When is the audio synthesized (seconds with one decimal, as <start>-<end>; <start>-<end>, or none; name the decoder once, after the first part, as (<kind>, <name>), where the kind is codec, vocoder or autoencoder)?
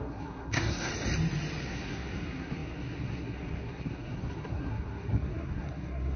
0.0-0.9 (codec, SNAC); 1.6-6.2